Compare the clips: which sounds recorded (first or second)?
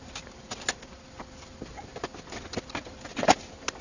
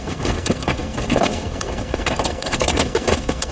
first